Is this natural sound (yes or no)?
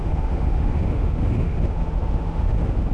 no